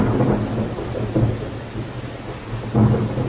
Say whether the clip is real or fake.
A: real